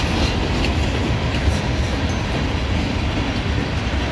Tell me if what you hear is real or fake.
real